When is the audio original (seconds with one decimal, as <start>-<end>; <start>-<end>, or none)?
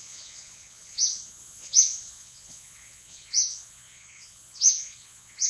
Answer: none